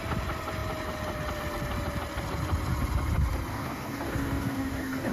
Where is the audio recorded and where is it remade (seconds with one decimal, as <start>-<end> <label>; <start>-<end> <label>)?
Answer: 0.0-3.5 recorded; 3.5-5.1 remade